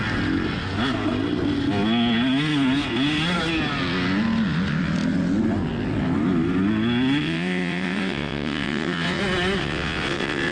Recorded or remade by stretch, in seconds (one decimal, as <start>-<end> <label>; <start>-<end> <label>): 0.0-7.2 recorded; 7.2-9.2 remade; 9.2-9.6 recorded; 9.6-10.5 remade